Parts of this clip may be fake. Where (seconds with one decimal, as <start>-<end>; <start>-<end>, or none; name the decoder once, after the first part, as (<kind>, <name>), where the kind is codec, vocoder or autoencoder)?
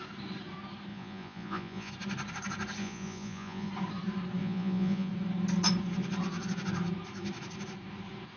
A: 0.9-1.9 (vocoder, Vocos); 2.8-3.7; 4.4-5.1